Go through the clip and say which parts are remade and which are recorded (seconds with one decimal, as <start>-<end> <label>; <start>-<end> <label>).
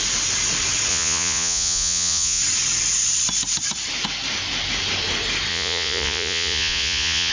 0.0-0.9 recorded; 0.9-2.4 remade; 2.4-5.5 recorded; 5.5-7.3 remade